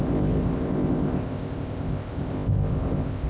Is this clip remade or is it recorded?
remade